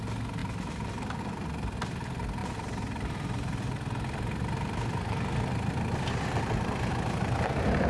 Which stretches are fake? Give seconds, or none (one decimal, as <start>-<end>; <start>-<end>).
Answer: 0.4-1.2; 2.4-6.9